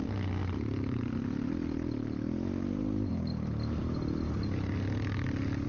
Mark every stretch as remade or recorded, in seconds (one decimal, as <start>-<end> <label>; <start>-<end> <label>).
0.0-5.7 recorded

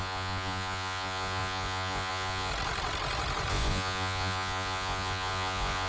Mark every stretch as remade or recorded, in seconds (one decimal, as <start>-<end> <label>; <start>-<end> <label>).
0.0-2.5 remade; 2.5-3.5 recorded; 3.5-5.9 remade

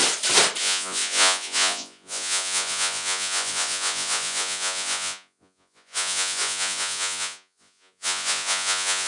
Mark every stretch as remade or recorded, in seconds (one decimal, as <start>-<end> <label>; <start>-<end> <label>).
0.0-0.6 recorded; 0.6-9.1 remade

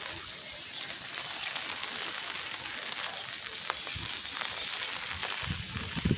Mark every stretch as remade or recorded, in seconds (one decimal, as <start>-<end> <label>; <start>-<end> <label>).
0.0-6.2 recorded

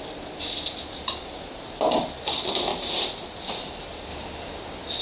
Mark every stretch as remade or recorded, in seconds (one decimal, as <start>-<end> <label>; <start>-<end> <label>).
0.0-5.0 recorded

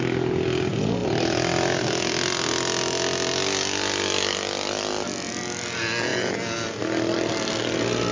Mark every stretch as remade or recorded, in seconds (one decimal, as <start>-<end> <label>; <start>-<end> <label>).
0.0-8.1 recorded